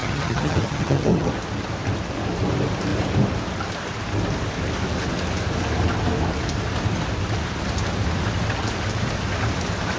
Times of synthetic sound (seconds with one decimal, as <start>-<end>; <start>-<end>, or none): 0.0-1.3